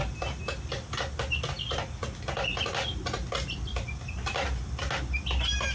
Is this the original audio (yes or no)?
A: yes